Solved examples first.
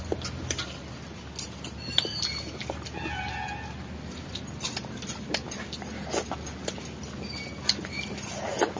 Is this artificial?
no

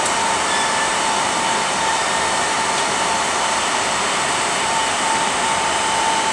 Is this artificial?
yes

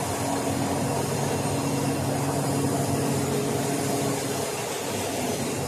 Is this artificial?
no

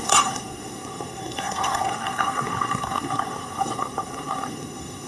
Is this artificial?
yes